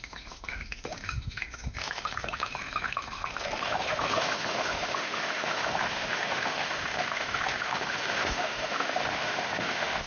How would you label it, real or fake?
fake